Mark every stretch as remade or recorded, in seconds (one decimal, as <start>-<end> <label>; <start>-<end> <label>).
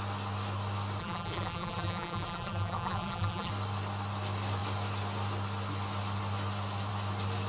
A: 0.0-1.0 recorded; 1.0-3.5 remade; 3.5-7.5 recorded